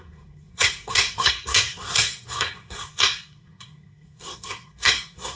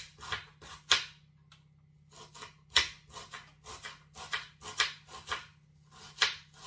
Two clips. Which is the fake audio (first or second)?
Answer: first